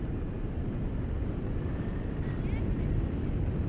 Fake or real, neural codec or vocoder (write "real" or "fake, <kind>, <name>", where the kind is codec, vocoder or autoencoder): real